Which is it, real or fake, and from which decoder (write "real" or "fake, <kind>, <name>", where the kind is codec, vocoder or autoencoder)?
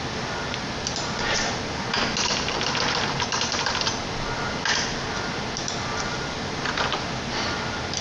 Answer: real